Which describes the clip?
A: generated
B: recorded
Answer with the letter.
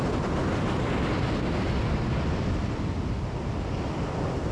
B